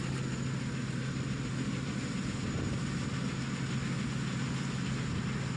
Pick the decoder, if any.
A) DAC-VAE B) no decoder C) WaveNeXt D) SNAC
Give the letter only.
B